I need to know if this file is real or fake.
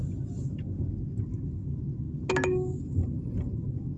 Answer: real